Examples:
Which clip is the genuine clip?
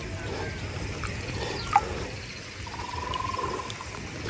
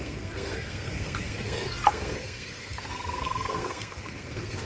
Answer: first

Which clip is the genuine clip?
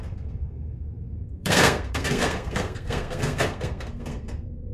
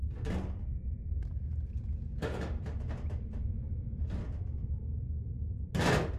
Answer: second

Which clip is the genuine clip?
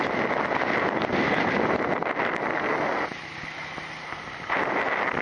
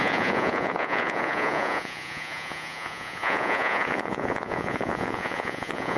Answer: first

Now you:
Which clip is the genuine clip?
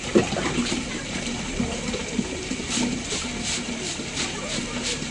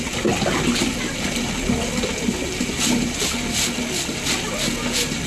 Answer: second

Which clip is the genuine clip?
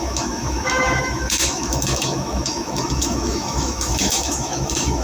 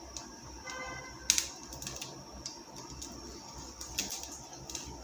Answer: second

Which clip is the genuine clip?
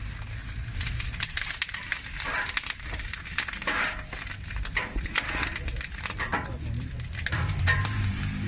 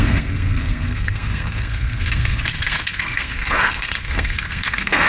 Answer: first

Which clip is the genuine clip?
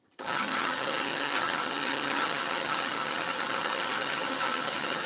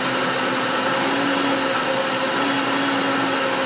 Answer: second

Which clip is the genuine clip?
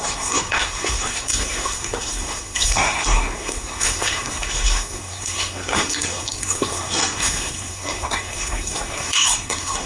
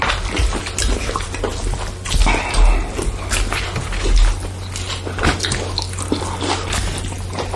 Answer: second